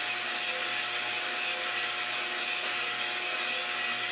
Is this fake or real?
real